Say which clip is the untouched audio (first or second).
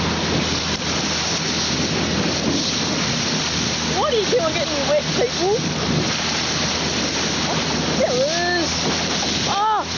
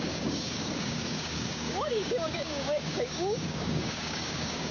first